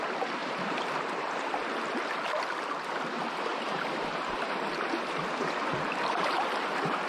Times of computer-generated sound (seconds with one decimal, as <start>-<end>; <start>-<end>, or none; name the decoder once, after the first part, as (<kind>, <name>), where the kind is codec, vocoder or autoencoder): 0.4-2.0 (vocoder, BigVGAN v2); 3.5-7.1

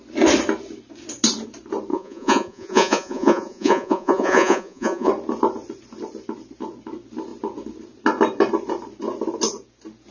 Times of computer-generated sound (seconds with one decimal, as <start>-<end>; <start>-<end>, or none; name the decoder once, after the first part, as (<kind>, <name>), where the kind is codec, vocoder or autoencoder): 1.9-5.1 (vocoder, Vocos)

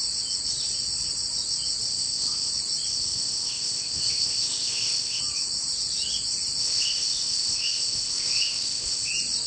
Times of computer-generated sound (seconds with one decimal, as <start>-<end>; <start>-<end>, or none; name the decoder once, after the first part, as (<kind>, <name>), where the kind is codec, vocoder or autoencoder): 1.9-2.5 (codec, ZipCodec); 2.9-5.2; 6.6-9.1

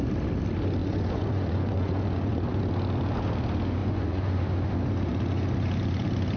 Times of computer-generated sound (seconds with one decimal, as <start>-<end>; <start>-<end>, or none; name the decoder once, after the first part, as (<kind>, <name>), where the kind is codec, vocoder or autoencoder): 0.8-2.6 (vocoder, Vocos); 3.8-4.4